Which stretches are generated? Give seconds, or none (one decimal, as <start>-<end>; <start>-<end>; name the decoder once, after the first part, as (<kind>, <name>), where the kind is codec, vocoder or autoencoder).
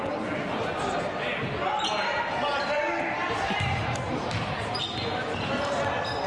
2.5-4.8 (vocoder, BigVGAN v2)